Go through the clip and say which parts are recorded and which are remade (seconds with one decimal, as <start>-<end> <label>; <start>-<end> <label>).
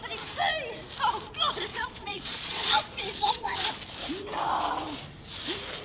0.0-1.7 recorded; 1.7-3.7 remade; 3.7-5.8 recorded